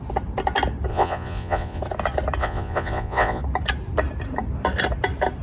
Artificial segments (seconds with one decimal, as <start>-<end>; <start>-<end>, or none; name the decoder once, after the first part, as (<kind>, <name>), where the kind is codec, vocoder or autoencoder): 0.9-1.8 (vocoder, Vocos); 2.4-3.4